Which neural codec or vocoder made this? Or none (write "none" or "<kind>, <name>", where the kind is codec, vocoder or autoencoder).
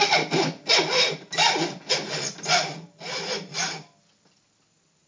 none